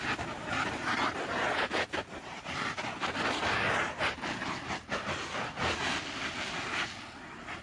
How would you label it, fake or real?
real